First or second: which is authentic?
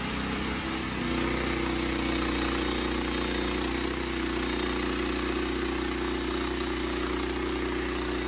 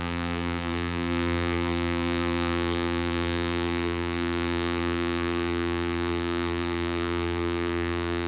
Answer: first